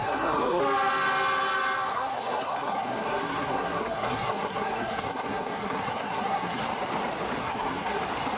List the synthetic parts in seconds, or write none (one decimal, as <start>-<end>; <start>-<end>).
0.0-0.6; 1.9-6.6; 7.4-8.0